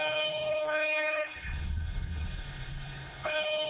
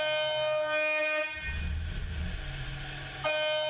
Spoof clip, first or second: first